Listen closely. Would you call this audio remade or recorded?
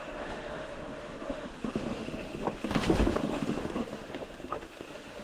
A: remade